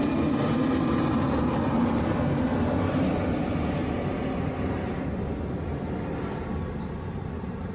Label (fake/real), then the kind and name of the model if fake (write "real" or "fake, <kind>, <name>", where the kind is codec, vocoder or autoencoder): real